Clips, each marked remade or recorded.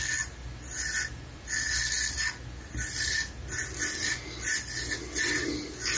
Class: recorded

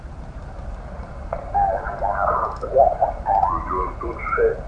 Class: recorded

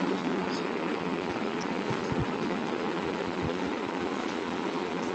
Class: remade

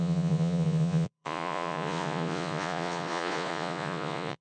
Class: remade